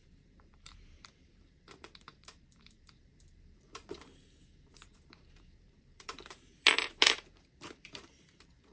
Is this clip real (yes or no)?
no